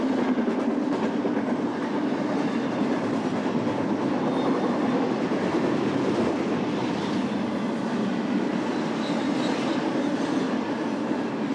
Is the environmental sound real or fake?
real